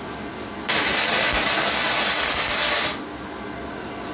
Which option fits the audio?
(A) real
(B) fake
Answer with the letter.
A